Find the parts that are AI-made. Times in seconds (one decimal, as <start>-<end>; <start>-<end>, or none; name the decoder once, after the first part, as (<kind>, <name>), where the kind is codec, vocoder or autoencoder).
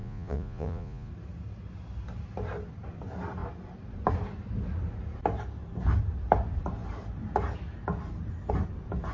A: 0.0-1.1 (vocoder, Vocos)